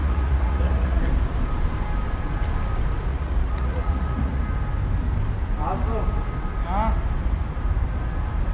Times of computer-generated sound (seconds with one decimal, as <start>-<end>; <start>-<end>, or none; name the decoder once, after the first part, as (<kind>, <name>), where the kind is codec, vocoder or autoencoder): 0.0-1.0 (vocoder, Vocos); 3.1-4.4